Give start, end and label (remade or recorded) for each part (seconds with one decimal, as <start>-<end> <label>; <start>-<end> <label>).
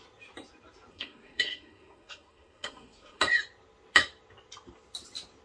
0.0-0.9 recorded; 0.9-3.2 remade; 3.2-5.4 recorded